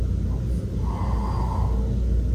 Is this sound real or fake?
real